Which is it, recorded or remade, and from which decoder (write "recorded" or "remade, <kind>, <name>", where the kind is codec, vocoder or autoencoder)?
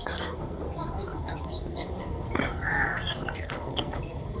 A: remade, codec, SNAC